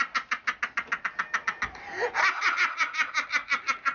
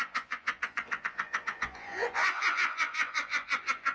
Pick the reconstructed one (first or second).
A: second